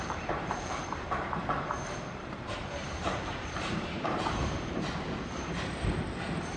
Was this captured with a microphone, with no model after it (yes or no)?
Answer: no